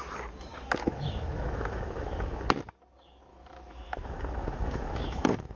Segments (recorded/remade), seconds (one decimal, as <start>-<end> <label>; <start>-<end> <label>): 0.0-0.5 recorded; 0.5-2.4 remade; 2.4-3.3 recorded; 3.3-5.6 remade

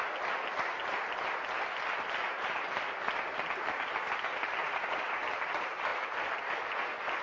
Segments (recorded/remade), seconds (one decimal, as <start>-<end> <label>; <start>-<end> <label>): 0.0-4.6 recorded; 4.6-5.2 remade; 5.2-7.2 recorded